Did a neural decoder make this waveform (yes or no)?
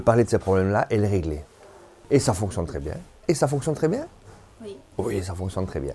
no